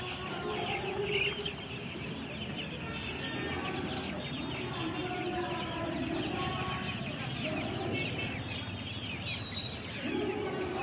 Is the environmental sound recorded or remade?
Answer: recorded